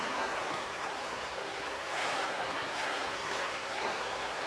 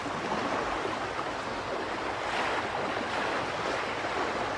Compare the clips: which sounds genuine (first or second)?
second